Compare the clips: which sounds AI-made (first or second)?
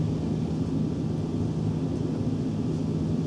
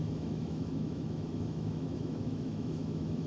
second